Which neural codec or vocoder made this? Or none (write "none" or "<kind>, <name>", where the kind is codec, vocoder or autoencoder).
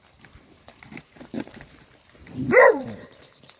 vocoder, BigVGAN v2